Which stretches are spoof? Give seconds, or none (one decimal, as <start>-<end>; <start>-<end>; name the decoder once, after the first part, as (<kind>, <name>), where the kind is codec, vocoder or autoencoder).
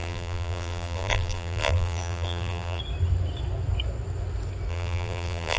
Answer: 0.0-2.8 (vocoder, BigVGAN v2); 4.7-5.6